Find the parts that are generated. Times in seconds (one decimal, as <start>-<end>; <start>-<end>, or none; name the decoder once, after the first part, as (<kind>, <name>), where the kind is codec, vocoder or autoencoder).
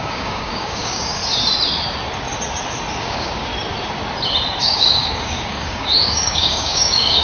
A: 0.0-1.2 (codec, DAC); 3.0-3.5; 4.6-7.2